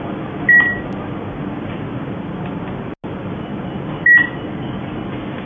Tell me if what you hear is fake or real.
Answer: real